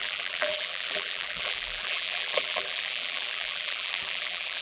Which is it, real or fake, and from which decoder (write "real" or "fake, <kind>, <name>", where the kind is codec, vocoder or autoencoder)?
fake, vocoder, BigVGAN v2